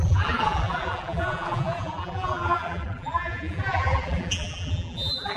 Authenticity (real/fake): fake